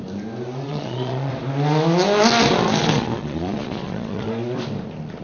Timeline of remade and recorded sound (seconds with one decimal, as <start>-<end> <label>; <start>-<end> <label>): 0.0-0.7 recorded; 0.7-1.3 remade; 1.3-2.8 recorded; 2.8-4.3 remade; 4.3-5.2 recorded

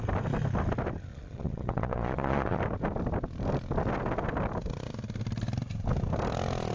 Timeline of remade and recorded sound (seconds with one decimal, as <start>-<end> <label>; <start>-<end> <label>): 0.0-1.1 recorded; 1.1-2.6 remade; 2.6-6.7 recorded

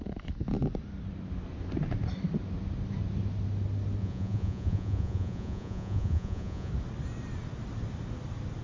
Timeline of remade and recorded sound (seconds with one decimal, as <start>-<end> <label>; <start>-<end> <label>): 0.0-4.0 recorded; 4.0-6.7 remade; 6.7-8.6 recorded

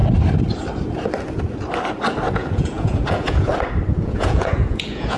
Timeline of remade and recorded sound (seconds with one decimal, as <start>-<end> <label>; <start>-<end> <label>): 0.0-2.3 recorded; 2.3-3.5 remade; 3.5-4.0 recorded; 4.0-5.2 remade

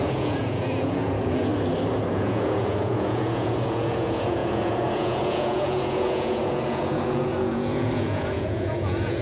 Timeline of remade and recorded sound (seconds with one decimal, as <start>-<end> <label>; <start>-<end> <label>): 0.0-1.5 remade; 1.5-2.1 recorded; 2.1-9.2 remade